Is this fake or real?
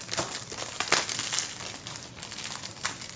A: real